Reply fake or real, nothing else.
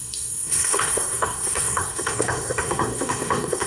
fake